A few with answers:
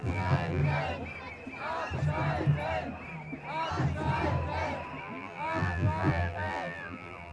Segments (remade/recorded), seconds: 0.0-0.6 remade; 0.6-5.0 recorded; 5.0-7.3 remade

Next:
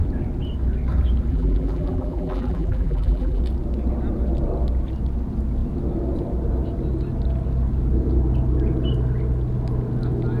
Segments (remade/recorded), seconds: 0.0-1.3 recorded; 1.3-3.4 remade; 3.4-10.4 recorded

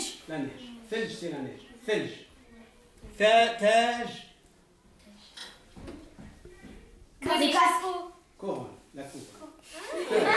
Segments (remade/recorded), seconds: 0.0-10.4 recorded

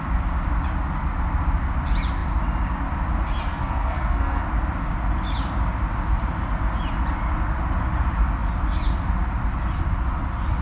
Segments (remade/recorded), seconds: 0.0-3.5 recorded; 3.5-4.4 remade; 4.4-10.6 recorded

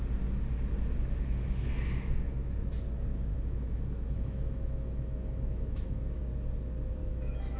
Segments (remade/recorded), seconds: 0.0-3.3 recorded; 3.3-6.2 remade; 6.2-7.0 recorded; 7.0-7.6 remade